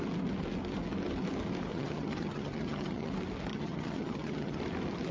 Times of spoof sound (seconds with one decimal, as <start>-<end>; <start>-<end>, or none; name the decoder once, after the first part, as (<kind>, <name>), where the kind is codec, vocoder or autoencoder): 1.7-3.1 (vocoder, HiFi-GAN); 3.5-4.6